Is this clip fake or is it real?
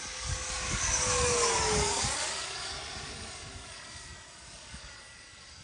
fake